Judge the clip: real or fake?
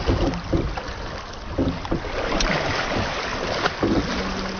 real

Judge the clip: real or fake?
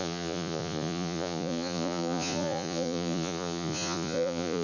fake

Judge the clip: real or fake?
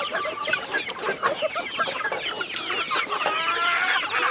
real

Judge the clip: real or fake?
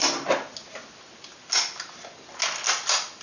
real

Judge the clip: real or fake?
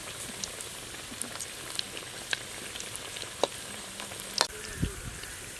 real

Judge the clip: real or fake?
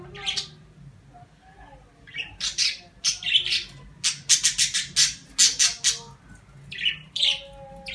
real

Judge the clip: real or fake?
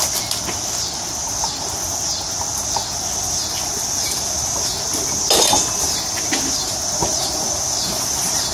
real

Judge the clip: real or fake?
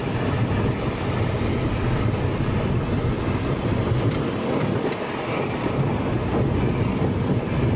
real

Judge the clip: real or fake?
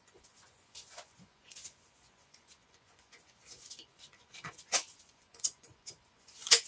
fake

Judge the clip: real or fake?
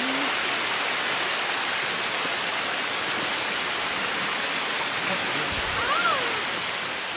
real